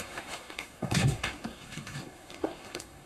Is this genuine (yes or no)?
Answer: no